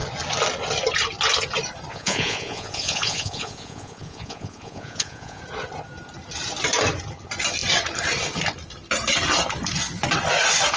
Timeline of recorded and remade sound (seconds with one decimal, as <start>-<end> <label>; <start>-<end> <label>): 0.0-1.9 recorded; 1.9-5.4 remade; 5.4-10.8 recorded